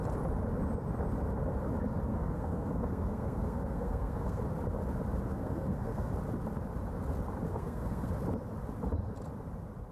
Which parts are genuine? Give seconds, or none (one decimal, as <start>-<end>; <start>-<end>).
0.0-2.1; 4.4-5.3; 6.1-7.5; 8.1-9.9